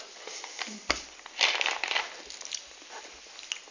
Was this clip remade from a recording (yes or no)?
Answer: no